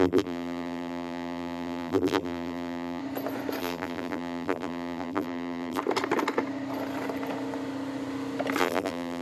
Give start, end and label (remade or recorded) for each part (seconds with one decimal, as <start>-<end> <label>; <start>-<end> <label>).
0.0-3.0 remade; 3.0-3.6 recorded; 3.6-5.8 remade; 5.8-8.6 recorded; 8.6-9.2 remade